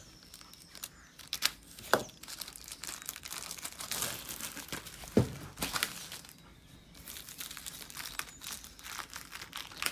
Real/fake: real